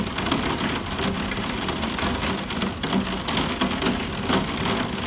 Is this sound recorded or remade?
recorded